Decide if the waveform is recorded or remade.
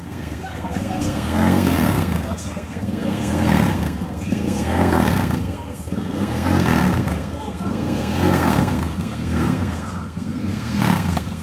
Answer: remade